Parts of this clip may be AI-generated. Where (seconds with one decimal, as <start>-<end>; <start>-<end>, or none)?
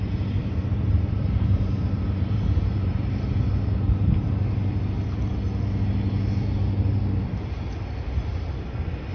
0.4-3.4